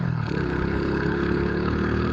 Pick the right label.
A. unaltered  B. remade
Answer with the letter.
B